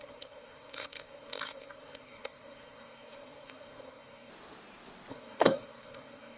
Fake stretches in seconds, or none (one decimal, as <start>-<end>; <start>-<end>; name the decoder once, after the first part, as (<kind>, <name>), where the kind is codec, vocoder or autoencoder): 0.0-4.3 (codec, SNAC); 5.1-6.4